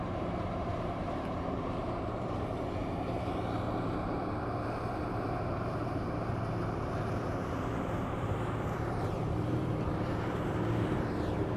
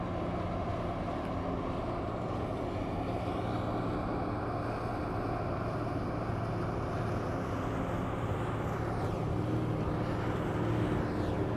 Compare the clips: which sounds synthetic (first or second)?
first